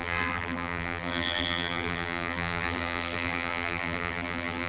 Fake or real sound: fake